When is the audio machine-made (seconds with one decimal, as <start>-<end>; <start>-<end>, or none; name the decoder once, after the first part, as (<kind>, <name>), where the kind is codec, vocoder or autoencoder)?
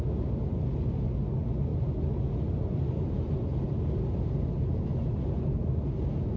none